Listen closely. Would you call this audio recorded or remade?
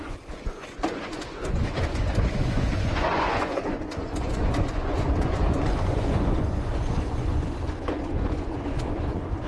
remade